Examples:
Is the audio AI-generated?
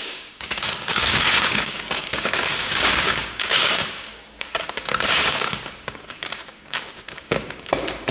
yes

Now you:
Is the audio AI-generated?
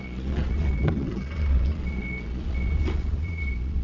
yes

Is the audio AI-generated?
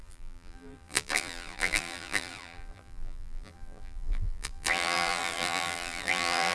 yes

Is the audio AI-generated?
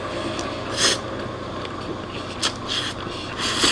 no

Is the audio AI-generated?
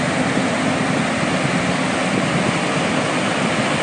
no